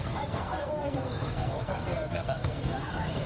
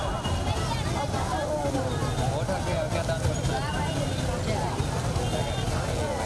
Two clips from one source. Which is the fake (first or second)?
first